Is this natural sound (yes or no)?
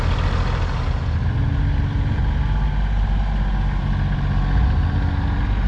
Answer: yes